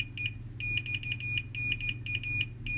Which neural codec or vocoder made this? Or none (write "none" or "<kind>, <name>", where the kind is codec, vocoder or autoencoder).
none